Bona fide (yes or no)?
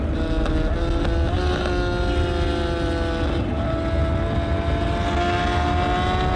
yes